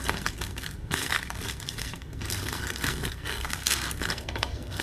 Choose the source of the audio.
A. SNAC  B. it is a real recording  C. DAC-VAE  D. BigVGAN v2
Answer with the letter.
A